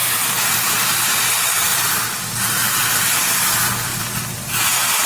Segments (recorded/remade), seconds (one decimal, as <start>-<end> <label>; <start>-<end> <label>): 0.0-1.7 recorded; 1.7-3.2 remade; 3.2-3.9 recorded; 3.9-4.5 remade; 4.5-5.1 recorded